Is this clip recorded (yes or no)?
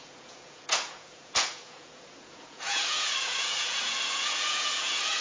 no